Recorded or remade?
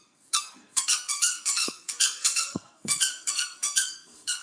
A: remade